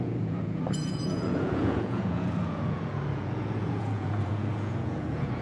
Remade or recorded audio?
remade